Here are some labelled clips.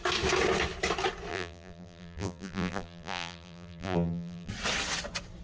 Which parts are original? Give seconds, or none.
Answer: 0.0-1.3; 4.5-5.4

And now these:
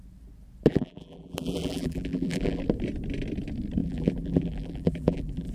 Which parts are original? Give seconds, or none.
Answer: 0.0-0.7; 2.6-3.8

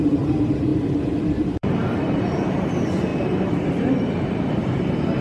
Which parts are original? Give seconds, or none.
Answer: none

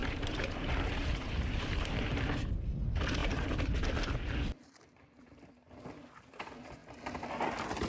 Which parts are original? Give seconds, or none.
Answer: 2.6-3.2; 5.2-7.9